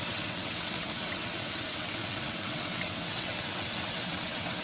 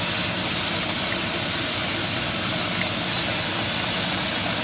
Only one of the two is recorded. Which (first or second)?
second